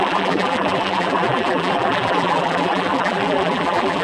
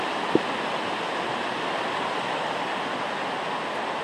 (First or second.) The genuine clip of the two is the second